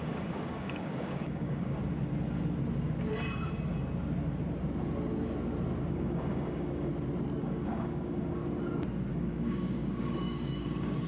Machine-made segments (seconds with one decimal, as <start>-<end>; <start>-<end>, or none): 0.0-1.8; 5.9-6.9; 7.4-8.4; 9.1-11.1